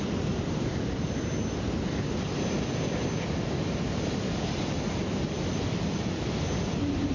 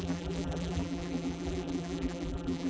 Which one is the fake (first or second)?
second